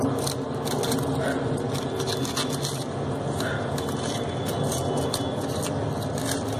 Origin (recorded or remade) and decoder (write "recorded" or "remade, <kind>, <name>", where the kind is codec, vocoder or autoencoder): recorded